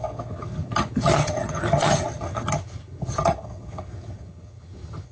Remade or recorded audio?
remade